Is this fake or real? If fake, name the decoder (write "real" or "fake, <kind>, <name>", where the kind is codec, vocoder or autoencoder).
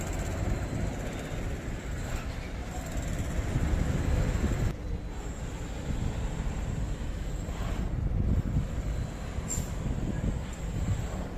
real